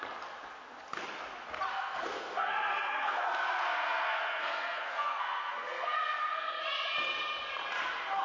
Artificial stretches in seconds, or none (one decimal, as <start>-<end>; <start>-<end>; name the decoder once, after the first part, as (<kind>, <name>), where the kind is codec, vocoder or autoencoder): 1.7-6.6 (codec, SNAC)